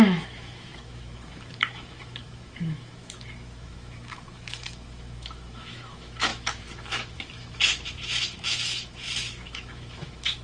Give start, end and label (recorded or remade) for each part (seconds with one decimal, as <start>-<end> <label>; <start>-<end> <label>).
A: 0.0-10.4 remade